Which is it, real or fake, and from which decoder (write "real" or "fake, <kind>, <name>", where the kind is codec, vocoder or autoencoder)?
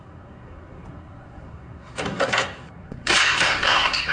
fake, codec, SNAC